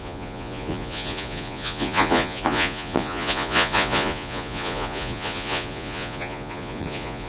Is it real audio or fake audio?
fake